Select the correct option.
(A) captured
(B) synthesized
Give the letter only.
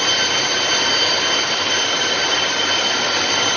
A